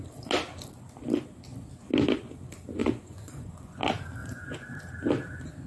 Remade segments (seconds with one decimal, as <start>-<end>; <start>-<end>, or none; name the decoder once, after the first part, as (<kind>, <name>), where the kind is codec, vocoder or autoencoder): 2.8-3.8 (vocoder, Vocos); 4.2-4.8